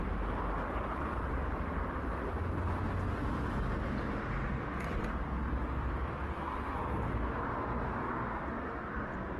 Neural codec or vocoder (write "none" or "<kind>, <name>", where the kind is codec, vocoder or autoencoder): none